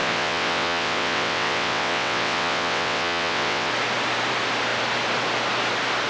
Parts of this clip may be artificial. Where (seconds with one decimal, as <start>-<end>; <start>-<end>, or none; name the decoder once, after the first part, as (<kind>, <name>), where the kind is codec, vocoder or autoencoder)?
0.0-3.7 (vocoder, WaveNeXt)